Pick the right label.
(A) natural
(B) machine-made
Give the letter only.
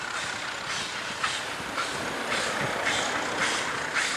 A